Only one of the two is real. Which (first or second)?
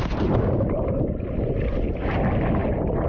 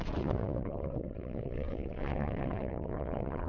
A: first